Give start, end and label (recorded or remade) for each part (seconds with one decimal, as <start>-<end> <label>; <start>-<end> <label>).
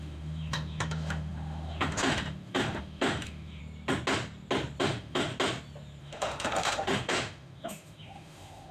0.0-3.6 remade; 3.6-4.8 recorded; 4.8-5.3 remade; 5.3-6.0 recorded; 6.0-8.7 remade